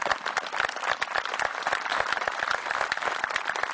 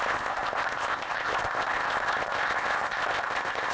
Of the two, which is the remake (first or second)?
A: second